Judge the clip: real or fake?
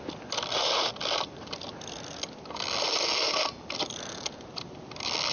real